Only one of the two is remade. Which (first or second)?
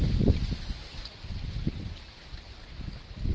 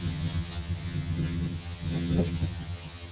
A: second